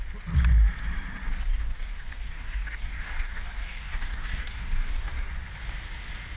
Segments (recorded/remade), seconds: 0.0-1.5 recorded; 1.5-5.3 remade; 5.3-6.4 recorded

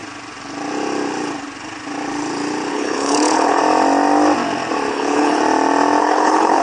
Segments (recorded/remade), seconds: 0.0-2.7 recorded; 2.7-3.6 remade; 3.6-4.9 recorded; 4.9-5.4 remade; 5.4-6.0 recorded; 6.0-6.6 remade